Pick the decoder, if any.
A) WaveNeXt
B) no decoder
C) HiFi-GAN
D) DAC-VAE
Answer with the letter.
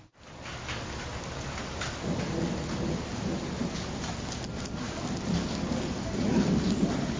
B